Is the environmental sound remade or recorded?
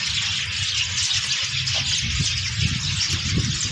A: recorded